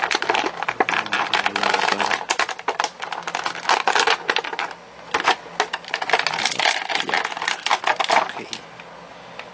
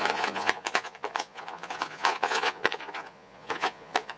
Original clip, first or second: first